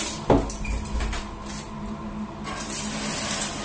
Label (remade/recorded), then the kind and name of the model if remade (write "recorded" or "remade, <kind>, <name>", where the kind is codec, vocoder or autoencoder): recorded